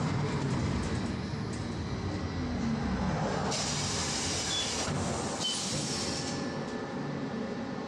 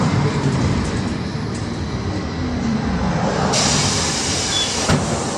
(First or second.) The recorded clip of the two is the first